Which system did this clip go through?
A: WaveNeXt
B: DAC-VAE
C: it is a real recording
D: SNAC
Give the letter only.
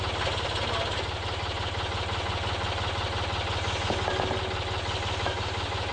C